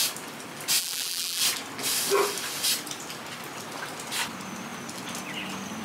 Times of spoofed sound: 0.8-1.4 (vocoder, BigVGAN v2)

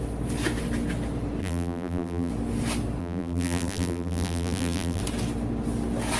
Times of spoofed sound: 1.4-2.3 (vocoder, BigVGAN v2); 3.0-5.0

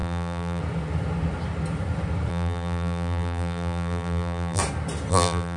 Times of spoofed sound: 0.0-0.6 (vocoder, BigVGAN v2); 2.3-4.6; 5.1-5.6

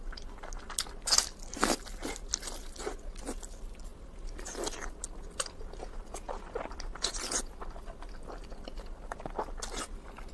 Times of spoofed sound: none